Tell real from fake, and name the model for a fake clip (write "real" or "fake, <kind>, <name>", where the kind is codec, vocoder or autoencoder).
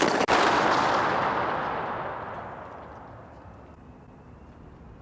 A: real